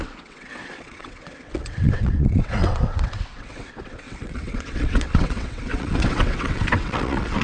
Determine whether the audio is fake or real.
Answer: fake